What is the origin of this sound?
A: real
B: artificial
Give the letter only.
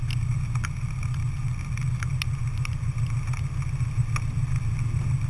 A